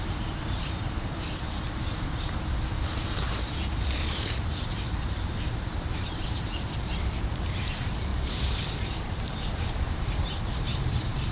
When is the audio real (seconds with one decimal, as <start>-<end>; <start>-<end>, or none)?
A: none